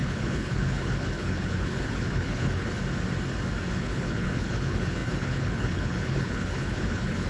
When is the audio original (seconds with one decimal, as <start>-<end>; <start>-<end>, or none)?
2.8-3.7